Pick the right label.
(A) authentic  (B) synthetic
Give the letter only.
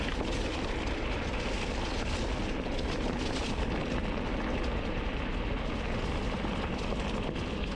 A